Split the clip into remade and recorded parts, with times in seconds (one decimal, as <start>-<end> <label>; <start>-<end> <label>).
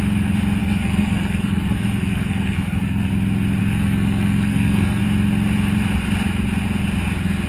0.0-0.6 recorded; 0.6-3.1 remade; 3.1-3.6 recorded; 3.6-5.0 remade; 5.0-7.5 recorded